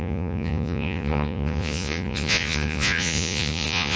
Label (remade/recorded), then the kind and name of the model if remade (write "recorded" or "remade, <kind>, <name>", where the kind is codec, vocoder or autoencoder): remade, vocoder, Vocos